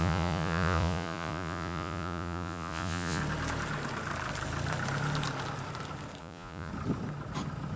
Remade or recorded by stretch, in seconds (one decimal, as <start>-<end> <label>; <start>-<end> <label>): 0.0-3.2 remade; 3.2-6.2 recorded; 6.2-6.7 remade; 6.7-7.8 recorded